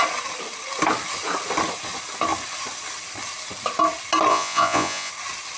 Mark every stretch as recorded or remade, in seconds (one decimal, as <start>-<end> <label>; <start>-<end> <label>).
0.0-4.3 recorded; 4.3-5.1 remade; 5.1-5.6 recorded